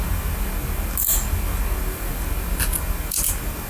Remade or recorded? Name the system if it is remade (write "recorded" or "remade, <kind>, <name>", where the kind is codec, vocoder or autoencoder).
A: recorded